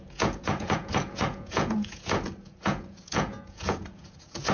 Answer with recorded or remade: remade